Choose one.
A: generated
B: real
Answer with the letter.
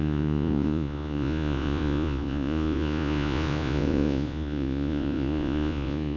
A